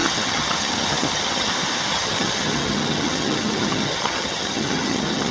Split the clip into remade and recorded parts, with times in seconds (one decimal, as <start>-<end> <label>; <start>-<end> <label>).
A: 0.0-1.5 remade; 1.5-1.9 recorded; 1.9-5.3 remade